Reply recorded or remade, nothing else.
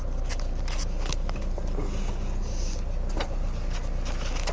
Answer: recorded